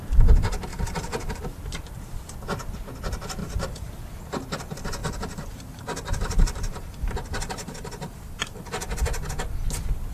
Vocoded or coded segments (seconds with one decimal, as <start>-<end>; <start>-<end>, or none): 0.7-1.4; 3.4-3.9; 5.0-8.6